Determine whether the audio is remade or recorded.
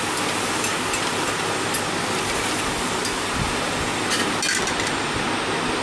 recorded